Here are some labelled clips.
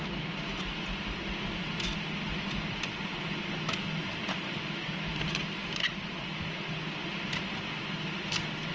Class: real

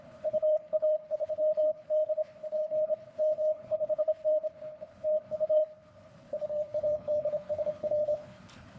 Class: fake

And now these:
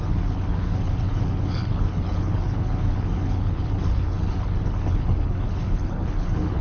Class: fake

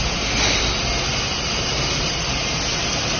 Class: real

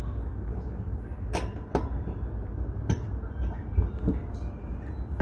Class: real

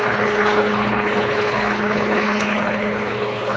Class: fake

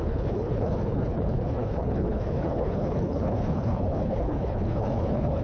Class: fake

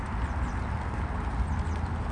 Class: real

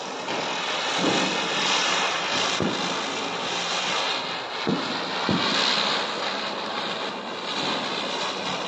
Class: real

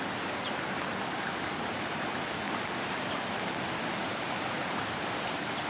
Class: real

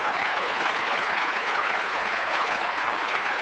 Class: fake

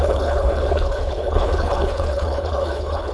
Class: fake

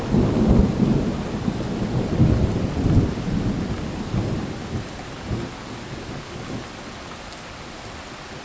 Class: real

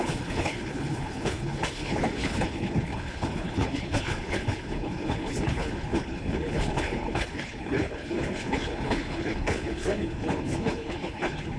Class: fake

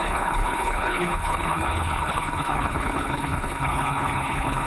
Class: fake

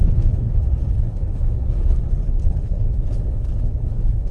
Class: fake